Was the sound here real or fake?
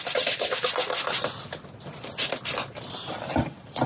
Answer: real